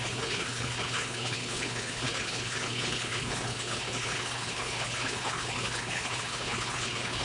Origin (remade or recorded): remade